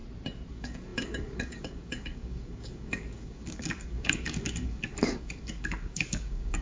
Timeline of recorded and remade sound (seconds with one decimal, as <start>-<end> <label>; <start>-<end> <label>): 0.0-0.5 recorded; 0.5-6.6 remade